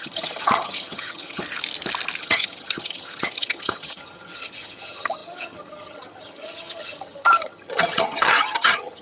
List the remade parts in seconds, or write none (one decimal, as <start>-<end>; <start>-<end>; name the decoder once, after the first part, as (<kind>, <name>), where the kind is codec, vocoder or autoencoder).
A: 0.0-1.4 (vocoder, HiFi-GAN); 2.2-9.0